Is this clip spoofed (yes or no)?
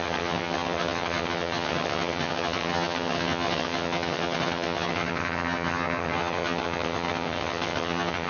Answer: yes